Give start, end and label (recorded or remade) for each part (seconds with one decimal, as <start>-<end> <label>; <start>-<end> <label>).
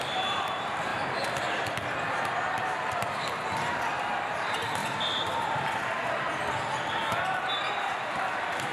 0.0-0.9 remade; 0.9-4.3 recorded; 4.3-4.8 remade; 4.8-7.8 recorded; 7.8-8.7 remade